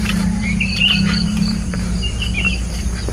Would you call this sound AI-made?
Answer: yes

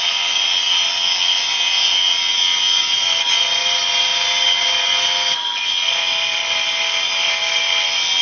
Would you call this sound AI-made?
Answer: no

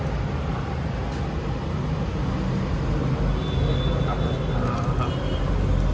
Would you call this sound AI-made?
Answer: no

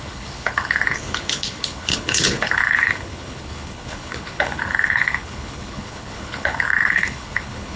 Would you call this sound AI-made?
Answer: yes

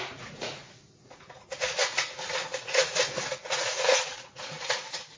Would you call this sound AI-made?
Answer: yes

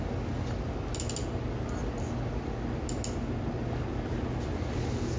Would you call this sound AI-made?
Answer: no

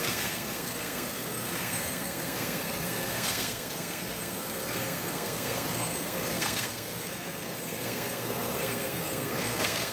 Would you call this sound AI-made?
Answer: yes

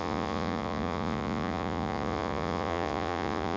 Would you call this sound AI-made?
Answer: yes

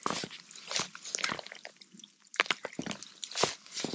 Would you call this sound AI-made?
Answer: no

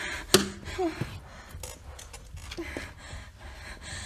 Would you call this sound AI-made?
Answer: no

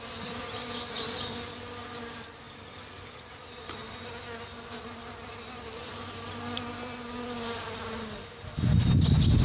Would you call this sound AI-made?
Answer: no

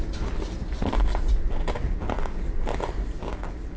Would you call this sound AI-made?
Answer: no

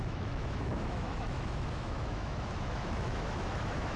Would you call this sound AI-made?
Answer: yes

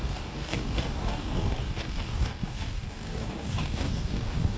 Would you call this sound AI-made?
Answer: yes